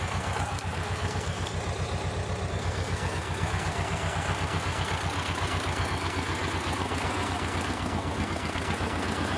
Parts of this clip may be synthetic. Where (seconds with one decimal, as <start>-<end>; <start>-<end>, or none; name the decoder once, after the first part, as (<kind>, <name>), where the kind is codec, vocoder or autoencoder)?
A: 0.0-1.5 (codec, SNAC); 2.5-9.4